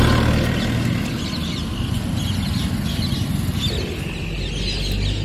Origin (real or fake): real